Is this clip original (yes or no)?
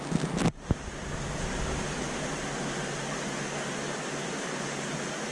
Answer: yes